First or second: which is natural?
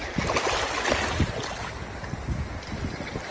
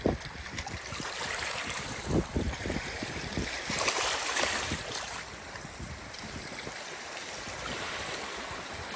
first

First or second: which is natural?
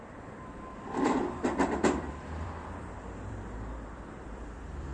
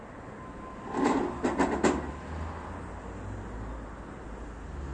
second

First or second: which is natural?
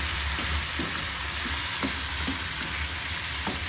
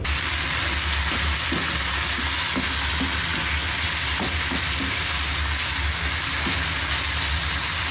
second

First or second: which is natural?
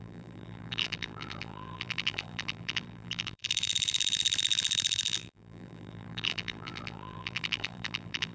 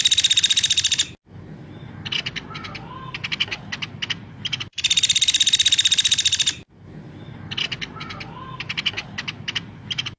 second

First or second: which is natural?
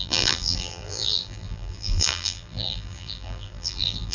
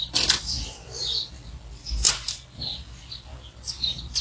second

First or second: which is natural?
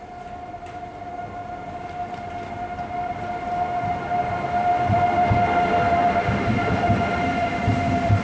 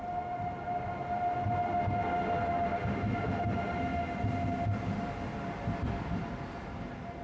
second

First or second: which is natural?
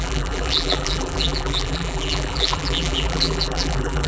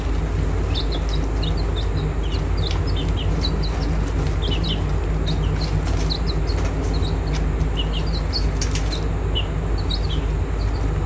second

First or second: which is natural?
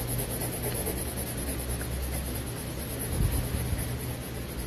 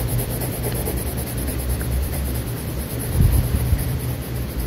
first